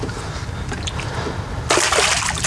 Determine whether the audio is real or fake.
real